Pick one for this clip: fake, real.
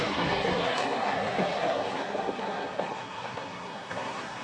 fake